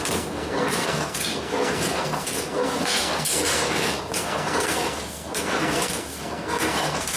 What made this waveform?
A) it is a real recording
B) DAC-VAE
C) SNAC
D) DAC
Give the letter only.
C